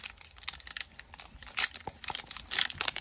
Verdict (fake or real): real